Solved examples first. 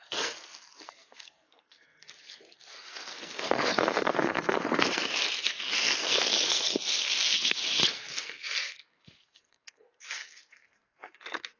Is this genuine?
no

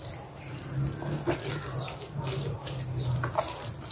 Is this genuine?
yes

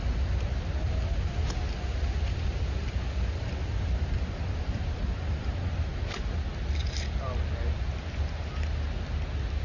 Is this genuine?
yes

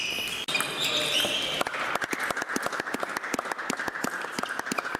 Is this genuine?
yes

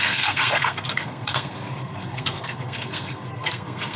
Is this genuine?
no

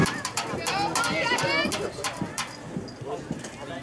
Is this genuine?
yes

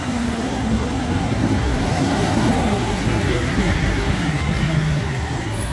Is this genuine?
no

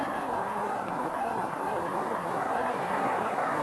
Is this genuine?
no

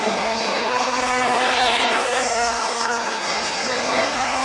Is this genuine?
no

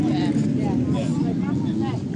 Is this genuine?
yes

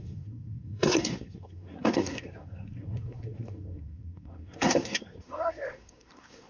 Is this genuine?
no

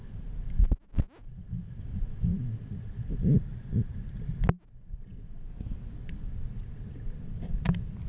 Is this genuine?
yes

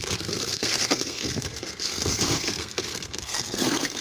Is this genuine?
no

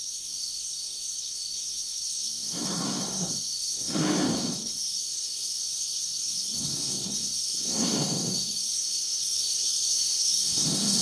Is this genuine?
no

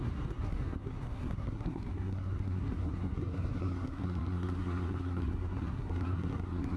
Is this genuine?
no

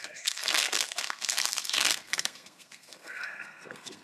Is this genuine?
no